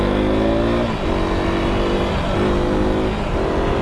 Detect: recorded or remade recorded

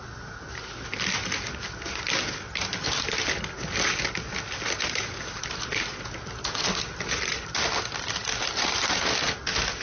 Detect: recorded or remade recorded